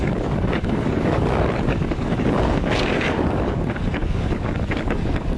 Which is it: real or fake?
fake